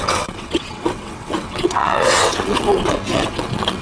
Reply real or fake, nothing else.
fake